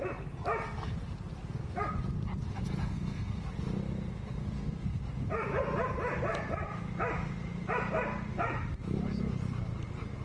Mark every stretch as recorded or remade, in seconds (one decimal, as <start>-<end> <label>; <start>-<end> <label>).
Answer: 0.0-2.8 recorded; 2.8-3.4 remade; 3.4-4.4 recorded; 4.4-5.0 remade; 5.0-10.2 recorded